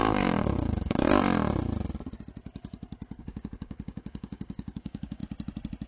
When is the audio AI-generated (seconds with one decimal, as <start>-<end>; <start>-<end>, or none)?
0.0-1.1; 3.2-5.2